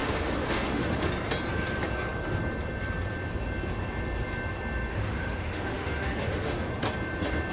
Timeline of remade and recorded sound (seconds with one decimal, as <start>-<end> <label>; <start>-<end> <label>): 0.0-1.1 remade; 1.1-4.9 recorded; 4.9-6.7 remade; 6.7-7.5 recorded